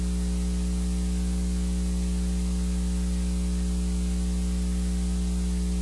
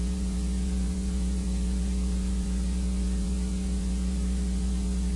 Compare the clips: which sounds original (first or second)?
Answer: first